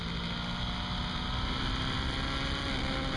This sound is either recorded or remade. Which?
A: recorded